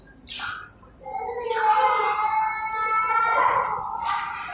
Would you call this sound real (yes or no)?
yes